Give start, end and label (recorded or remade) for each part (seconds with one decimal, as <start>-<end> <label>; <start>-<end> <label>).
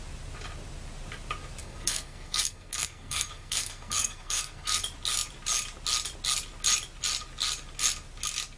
0.0-1.6 recorded; 1.6-4.8 remade; 4.8-8.6 recorded